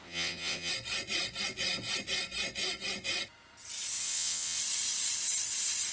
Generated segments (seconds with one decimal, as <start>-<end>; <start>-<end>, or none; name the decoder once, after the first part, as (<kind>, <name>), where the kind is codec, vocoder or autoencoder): 0.0-0.7 (vocoder, WaveNeXt); 4.0-4.6